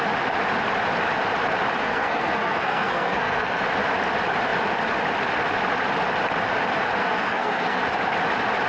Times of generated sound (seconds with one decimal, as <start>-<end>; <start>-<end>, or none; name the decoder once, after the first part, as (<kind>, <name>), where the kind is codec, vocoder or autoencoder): 1.8-3.6 (codec, SNAC); 7.0-7.8